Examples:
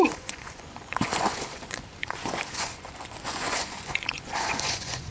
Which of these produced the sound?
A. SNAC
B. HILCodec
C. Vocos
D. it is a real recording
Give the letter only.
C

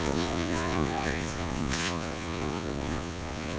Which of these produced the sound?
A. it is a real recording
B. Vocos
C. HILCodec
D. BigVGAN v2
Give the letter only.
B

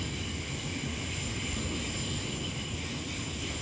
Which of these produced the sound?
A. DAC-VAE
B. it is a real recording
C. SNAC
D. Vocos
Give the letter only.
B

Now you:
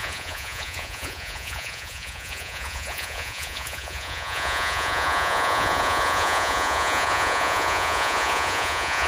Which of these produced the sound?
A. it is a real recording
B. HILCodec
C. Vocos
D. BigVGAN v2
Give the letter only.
C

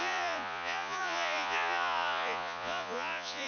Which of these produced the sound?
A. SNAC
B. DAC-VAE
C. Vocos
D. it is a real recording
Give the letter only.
C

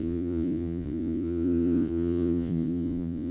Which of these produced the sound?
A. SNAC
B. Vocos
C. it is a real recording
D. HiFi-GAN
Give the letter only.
B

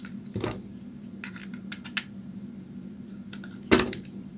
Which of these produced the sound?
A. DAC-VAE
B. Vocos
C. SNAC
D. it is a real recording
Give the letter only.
D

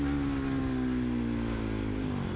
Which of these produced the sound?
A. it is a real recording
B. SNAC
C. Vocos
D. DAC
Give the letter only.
A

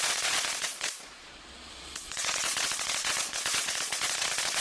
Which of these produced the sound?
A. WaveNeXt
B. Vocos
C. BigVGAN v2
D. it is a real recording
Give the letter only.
B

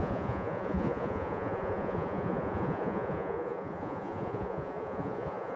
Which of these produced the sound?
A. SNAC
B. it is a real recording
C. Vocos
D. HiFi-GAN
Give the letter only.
C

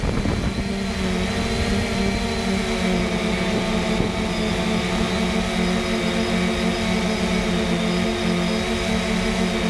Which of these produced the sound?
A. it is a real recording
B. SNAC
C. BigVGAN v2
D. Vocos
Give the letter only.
A